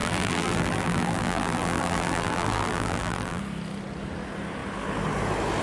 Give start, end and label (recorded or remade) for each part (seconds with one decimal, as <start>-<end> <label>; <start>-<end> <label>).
0.0-3.4 remade; 3.4-5.6 recorded